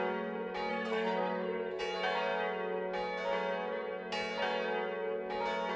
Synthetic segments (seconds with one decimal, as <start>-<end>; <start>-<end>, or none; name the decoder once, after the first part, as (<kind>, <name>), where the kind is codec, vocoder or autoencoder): 0.7-1.8 (codec, SNAC)